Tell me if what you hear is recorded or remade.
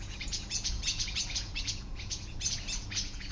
remade